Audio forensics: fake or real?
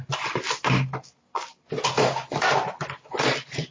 real